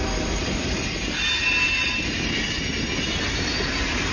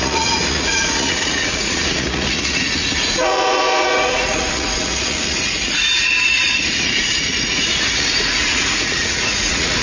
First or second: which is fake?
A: second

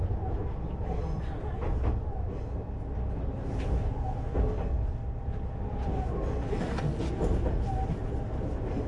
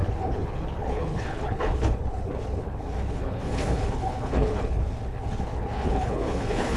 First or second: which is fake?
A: second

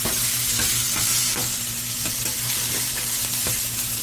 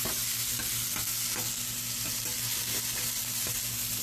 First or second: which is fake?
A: first